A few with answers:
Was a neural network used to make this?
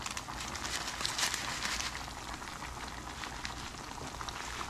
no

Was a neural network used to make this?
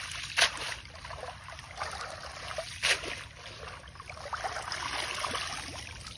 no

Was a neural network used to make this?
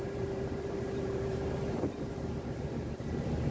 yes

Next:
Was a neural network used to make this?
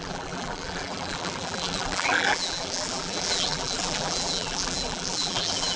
yes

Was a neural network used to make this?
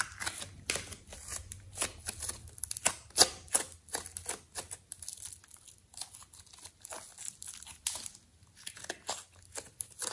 no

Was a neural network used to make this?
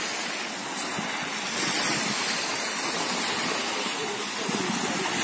no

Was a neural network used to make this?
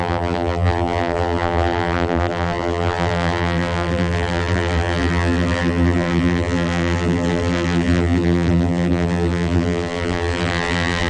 yes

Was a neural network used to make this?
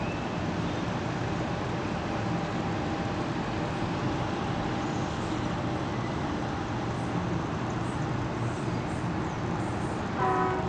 no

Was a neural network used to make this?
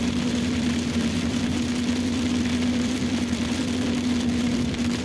yes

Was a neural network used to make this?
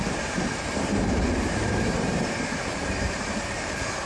yes